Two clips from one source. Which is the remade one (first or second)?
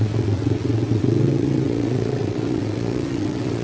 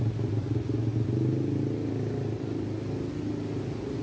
first